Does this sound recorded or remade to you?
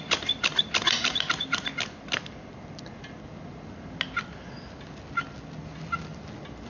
recorded